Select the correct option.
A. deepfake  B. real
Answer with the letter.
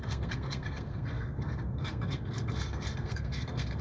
A